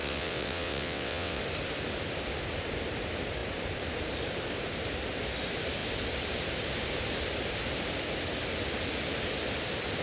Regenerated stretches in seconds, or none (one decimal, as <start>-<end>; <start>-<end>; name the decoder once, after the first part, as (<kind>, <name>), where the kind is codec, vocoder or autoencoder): 0.0-1.4 (vocoder, WaveNeXt)

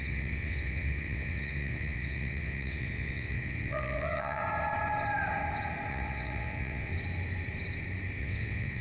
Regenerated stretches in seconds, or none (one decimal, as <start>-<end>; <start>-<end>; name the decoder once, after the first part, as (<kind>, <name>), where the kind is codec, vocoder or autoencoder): 0.0-4.4 (vocoder, WaveNeXt); 5.9-6.9; 8.2-8.8

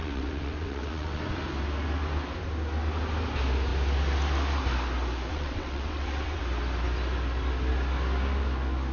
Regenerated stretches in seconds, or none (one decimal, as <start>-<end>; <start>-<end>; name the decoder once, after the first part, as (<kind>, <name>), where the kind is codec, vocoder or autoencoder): 0.0-1.2 (vocoder, WaveNeXt); 5.3-6.4

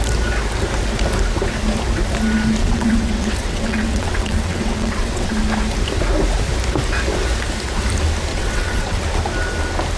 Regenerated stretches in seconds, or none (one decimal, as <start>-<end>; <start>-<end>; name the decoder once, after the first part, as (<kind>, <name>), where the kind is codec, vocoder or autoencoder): 2.6-5.3 (vocoder, WaveNeXt); 8.3-9.0